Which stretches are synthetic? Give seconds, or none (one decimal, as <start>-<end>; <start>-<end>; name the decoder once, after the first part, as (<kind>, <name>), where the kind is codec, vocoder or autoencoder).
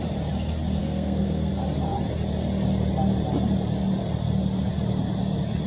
0.8-1.5 (codec, SNAC)